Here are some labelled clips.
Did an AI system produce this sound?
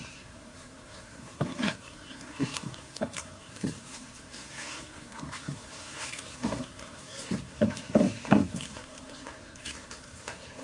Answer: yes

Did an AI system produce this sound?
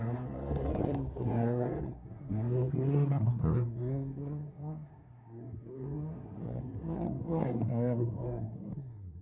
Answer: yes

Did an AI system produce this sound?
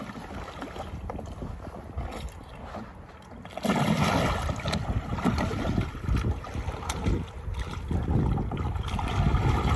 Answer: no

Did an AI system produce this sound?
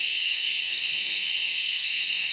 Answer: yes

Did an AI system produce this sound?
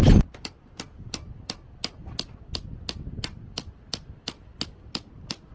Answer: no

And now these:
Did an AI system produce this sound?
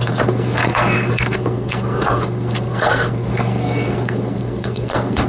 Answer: yes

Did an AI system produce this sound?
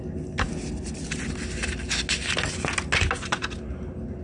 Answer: no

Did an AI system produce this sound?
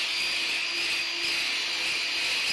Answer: no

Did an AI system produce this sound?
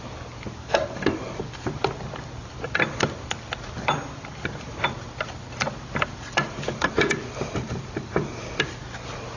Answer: no